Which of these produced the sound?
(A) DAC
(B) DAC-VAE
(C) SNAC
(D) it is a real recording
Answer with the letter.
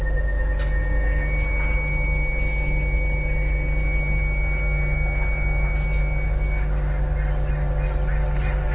D